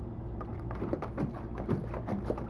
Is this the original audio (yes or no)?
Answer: yes